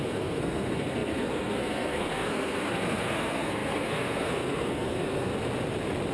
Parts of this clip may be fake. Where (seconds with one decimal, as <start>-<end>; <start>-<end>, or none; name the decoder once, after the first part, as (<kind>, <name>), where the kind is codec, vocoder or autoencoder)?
0.0-5.3 (codec, SNAC)